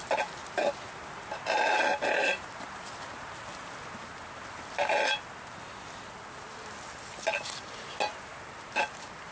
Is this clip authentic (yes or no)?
yes